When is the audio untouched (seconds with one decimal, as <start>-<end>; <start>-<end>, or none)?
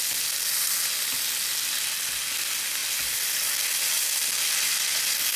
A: 0.0-5.4